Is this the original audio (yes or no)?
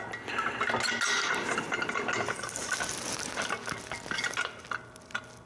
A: yes